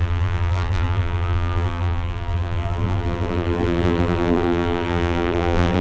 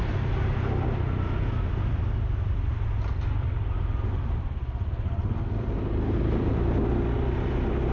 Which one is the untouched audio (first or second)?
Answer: second